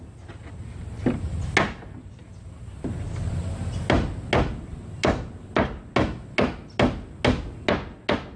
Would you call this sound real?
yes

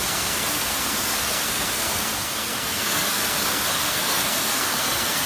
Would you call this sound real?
no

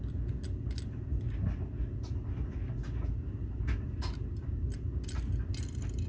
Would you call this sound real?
yes